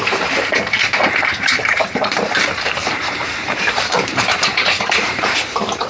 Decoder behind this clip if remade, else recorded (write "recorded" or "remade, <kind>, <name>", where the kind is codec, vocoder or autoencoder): remade, vocoder, BigVGAN v2